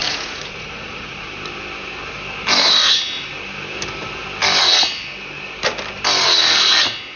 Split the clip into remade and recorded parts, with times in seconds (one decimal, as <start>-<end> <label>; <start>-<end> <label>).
0.0-1.3 remade; 1.3-7.2 recorded